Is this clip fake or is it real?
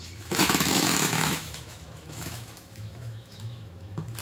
fake